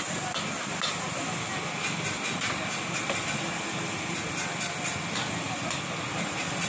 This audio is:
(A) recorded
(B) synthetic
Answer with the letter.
A